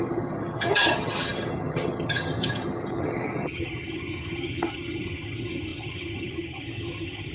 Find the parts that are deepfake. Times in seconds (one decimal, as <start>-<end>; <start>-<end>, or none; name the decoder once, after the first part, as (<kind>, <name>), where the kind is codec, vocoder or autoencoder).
0.0-7.3 (vocoder, HiFi-GAN)